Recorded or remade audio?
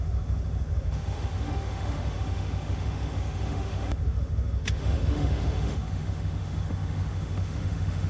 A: remade